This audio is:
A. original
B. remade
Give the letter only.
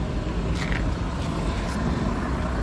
A